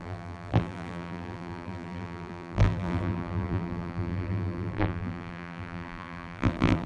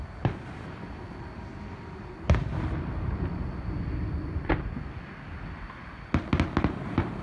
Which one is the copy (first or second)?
first